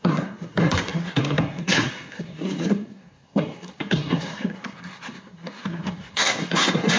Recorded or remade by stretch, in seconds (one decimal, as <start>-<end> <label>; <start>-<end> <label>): 0.0-7.0 remade